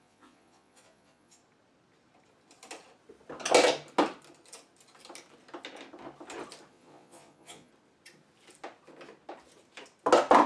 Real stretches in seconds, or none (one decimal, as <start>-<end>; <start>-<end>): 1.4-6.7; 7.7-10.5